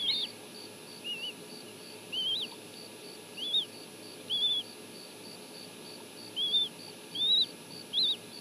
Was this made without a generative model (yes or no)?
yes